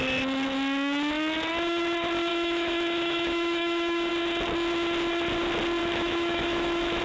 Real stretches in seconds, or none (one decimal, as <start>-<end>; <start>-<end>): 0.0-2.3; 4.1-5.8